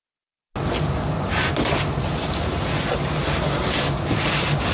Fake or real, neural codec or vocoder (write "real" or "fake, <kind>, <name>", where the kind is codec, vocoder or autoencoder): real